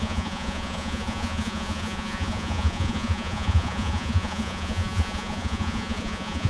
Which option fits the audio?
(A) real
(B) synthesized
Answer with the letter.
B